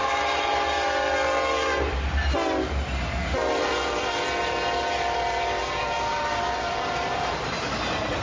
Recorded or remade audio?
remade